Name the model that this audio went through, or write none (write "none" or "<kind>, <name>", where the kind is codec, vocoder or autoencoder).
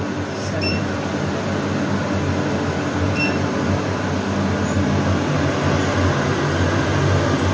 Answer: none